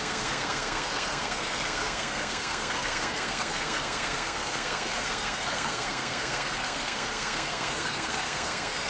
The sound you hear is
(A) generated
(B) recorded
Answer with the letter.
A